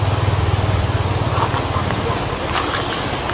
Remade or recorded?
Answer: recorded